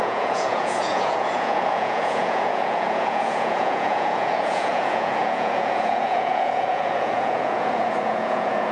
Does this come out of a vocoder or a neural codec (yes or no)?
yes